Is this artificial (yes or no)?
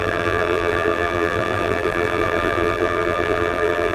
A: yes